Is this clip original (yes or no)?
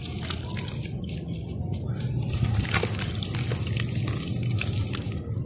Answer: yes